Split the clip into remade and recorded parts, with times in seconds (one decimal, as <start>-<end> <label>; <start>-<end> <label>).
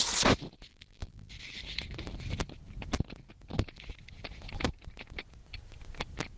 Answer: 0.0-0.7 recorded; 0.7-1.3 remade; 1.3-6.4 recorded